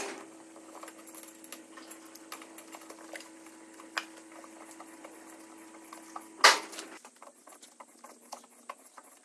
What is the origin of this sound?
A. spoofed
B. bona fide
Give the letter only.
B